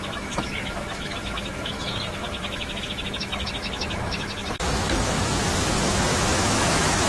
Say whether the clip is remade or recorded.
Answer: remade